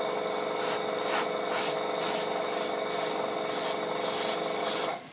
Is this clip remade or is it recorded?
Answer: recorded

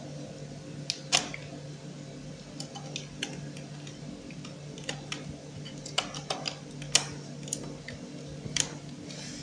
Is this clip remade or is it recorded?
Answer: recorded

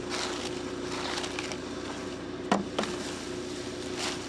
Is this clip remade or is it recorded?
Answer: recorded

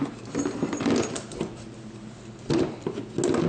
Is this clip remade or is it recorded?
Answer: recorded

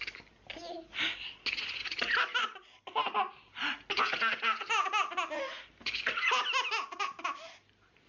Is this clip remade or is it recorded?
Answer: recorded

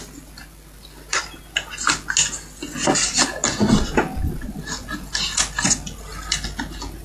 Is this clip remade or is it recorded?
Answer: recorded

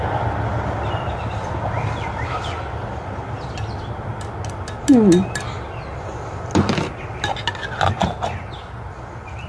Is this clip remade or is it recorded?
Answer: recorded